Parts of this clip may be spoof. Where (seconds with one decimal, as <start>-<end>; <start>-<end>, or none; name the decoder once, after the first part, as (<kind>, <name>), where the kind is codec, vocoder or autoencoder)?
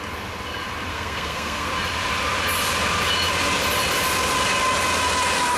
0.9-1.7 (codec, SNAC)